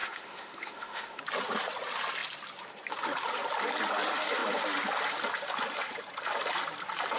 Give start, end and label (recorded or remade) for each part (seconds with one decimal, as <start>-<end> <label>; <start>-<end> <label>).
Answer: 0.0-1.2 remade; 1.2-7.2 recorded